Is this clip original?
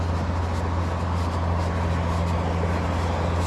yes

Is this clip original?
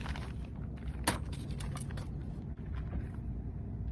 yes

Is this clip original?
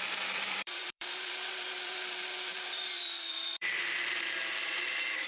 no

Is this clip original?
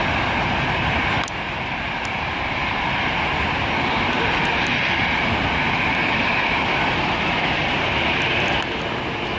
yes